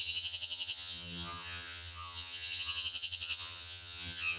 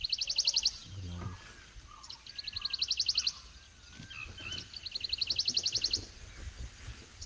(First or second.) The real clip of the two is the second